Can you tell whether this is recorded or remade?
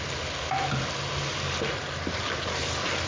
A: recorded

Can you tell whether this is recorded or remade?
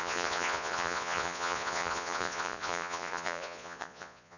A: remade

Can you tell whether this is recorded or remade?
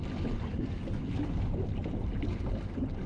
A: recorded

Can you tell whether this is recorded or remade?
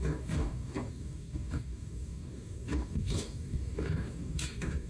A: remade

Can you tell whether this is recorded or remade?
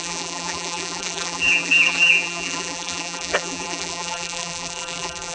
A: remade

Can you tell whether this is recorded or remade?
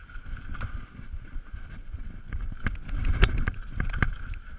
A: recorded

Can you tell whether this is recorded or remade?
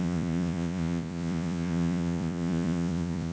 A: remade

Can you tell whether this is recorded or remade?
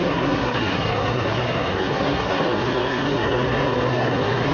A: remade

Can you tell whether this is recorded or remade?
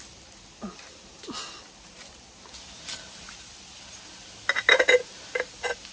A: recorded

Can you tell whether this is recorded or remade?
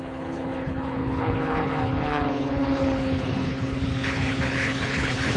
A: remade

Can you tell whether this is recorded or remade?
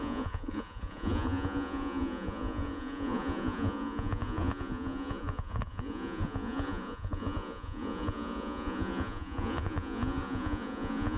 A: remade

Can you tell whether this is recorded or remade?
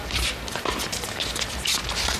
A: recorded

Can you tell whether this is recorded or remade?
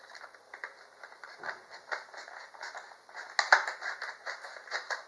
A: recorded